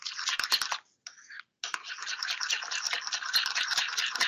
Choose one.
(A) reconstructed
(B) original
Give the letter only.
B